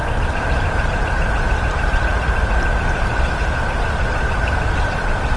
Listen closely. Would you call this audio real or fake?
real